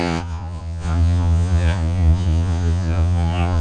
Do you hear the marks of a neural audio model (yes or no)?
yes